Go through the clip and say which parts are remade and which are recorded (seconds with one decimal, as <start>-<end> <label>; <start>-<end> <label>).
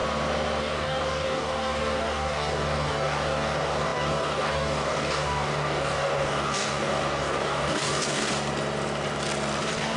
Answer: 0.0-0.6 recorded; 0.6-8.3 remade; 8.3-9.6 recorded; 9.6-10.0 remade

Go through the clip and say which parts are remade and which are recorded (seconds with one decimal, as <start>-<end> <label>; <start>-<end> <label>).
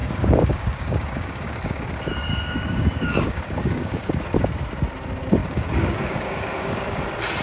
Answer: 0.0-4.1 remade; 4.1-5.4 recorded; 5.4-7.0 remade; 7.0-7.4 recorded